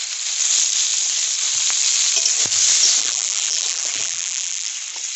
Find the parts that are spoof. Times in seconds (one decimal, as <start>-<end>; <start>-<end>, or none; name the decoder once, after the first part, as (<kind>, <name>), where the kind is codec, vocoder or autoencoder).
3.0-4.7 (vocoder, BigVGAN v2)